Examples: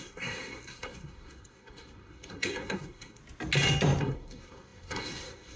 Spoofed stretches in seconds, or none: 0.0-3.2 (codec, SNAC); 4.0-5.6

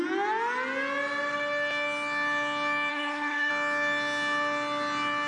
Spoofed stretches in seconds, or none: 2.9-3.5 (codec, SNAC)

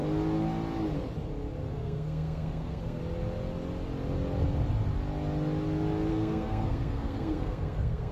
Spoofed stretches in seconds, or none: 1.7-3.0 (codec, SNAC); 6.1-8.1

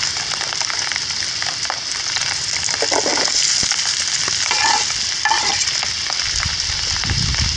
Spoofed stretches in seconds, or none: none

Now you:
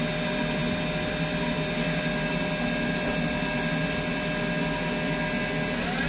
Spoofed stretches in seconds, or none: none

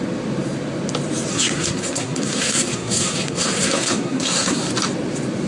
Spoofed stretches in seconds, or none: 1.3-4.6 (codec, SNAC)